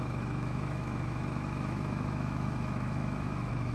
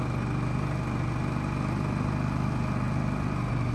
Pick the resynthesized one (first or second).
first